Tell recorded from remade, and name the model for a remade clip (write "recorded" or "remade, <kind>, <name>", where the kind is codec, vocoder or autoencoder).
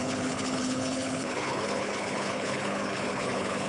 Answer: remade, codec, HILCodec